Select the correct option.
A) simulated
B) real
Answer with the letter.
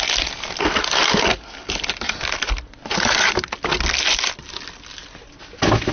B